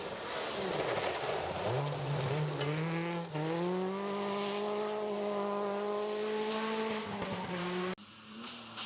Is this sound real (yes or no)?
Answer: yes